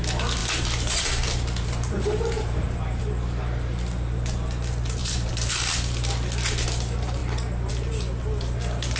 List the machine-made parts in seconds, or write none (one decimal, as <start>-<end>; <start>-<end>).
0.4-3.0; 5.0-5.5